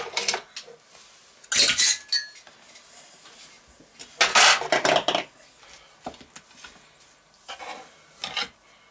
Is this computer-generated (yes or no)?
no